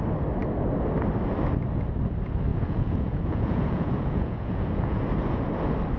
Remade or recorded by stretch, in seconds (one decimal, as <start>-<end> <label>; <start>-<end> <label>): 0.0-2.5 recorded; 2.5-5.0 remade; 5.0-6.0 recorded